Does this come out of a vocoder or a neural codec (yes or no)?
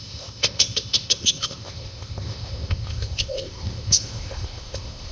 yes